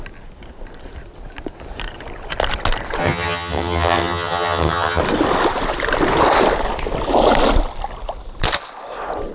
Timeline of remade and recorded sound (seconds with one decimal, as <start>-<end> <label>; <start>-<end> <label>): 0.0-3.0 recorded; 3.0-5.0 remade; 5.0-9.3 recorded